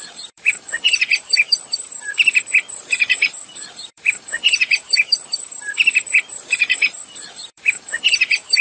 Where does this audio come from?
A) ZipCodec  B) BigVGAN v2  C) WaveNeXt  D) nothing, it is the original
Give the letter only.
B